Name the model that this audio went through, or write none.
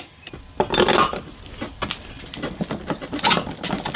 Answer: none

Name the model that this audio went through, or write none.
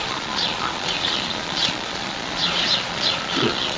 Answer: vocoder, Vocos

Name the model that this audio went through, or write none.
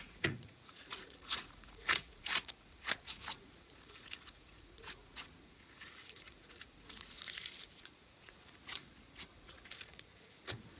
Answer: vocoder, Vocos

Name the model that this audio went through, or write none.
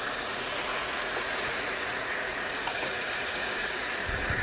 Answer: vocoder, Vocos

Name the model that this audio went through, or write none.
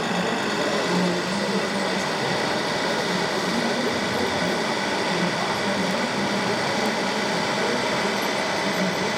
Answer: none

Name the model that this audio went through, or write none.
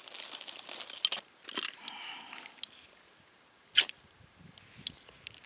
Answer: none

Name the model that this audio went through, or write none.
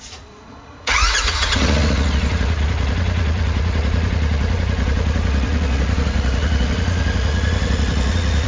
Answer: vocoder, Vocos